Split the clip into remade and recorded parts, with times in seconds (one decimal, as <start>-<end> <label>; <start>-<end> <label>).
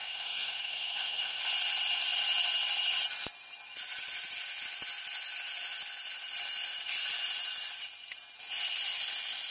0.0-1.4 remade; 1.4-9.5 recorded